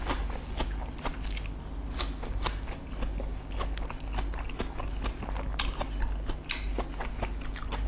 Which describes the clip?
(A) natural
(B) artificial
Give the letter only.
A